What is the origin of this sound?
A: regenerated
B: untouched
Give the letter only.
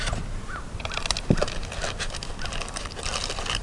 B